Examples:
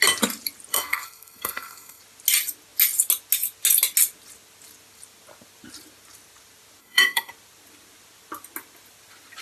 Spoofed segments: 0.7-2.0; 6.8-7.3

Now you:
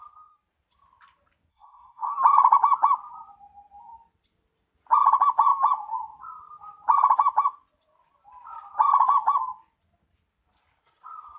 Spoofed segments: 1.5-2.1

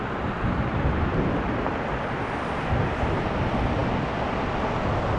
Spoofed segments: none